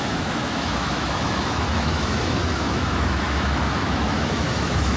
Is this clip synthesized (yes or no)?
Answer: yes